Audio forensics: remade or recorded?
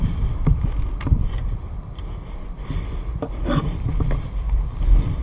remade